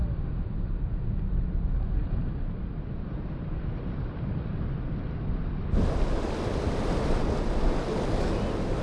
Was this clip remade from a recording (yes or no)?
no